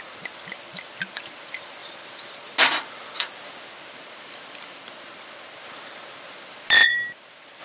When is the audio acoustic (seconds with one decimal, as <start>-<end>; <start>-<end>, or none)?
0.0-7.6